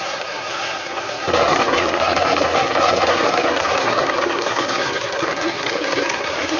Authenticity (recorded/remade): remade